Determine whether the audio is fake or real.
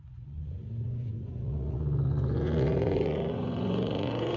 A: fake